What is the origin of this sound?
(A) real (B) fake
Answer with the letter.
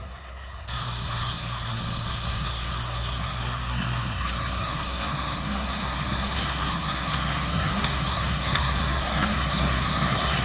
B